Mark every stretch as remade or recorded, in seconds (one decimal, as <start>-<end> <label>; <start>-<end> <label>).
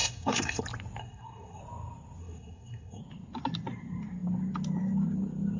0.0-0.6 remade; 0.6-1.0 recorded; 1.0-1.6 remade; 1.6-2.2 recorded; 2.2-3.0 remade; 3.0-5.6 recorded